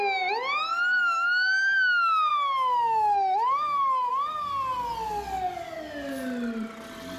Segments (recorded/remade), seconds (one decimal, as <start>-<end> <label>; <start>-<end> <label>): 0.0-7.2 recorded